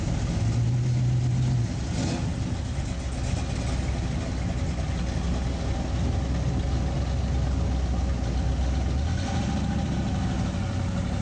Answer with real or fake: real